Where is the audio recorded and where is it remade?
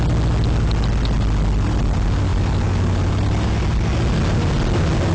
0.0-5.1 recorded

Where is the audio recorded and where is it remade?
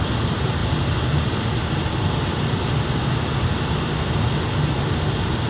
0.0-5.5 recorded